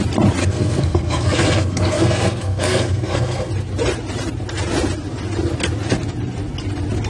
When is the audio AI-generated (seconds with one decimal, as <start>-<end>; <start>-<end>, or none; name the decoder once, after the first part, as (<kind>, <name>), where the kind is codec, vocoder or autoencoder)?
0.4-3.5 (codec, SNAC)